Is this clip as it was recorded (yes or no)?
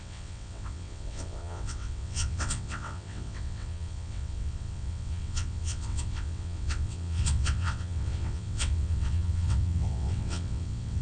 no